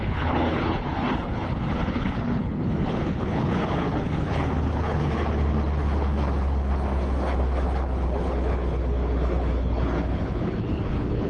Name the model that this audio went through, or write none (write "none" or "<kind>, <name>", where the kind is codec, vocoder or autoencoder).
codec, HILCodec